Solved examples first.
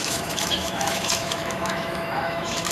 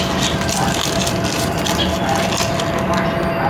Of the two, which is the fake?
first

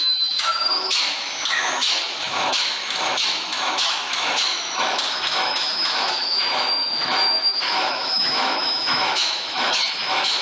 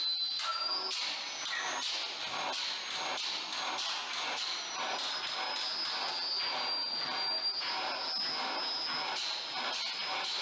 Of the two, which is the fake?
first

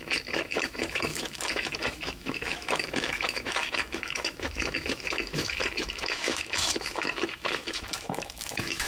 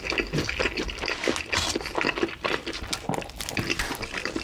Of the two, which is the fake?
first